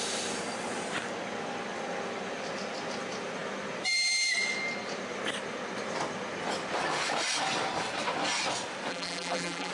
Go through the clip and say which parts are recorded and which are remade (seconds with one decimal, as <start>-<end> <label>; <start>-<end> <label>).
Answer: 0.0-8.9 recorded; 8.9-9.7 remade